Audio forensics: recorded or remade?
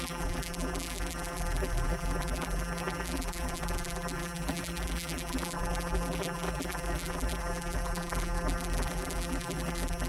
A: remade